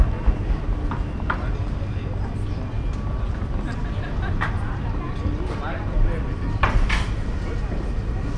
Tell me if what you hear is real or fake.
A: real